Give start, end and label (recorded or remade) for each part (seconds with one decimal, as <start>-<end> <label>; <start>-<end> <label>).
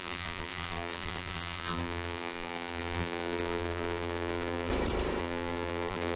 0.0-4.7 remade; 4.7-5.2 recorded; 5.2-6.2 remade